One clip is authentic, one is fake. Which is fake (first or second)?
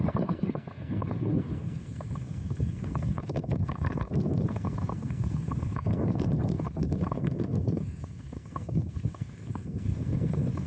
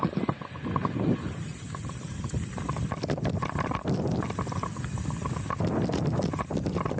first